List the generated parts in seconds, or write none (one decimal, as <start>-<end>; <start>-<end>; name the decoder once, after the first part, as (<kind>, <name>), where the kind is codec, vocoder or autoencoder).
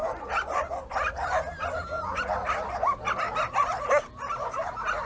none